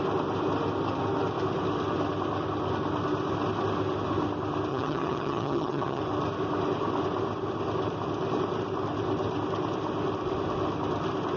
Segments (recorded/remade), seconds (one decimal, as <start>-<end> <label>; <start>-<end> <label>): 0.0-4.7 recorded; 4.7-6.0 remade; 6.0-11.4 recorded